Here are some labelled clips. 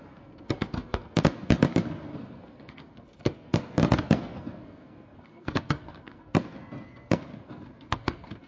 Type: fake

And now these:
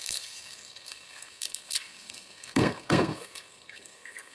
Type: fake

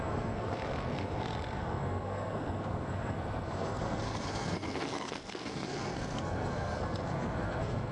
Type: fake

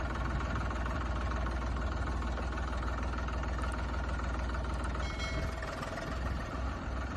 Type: real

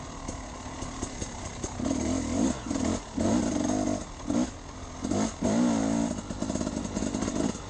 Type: real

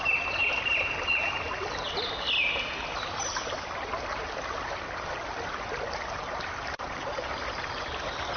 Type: real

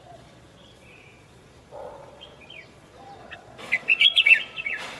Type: fake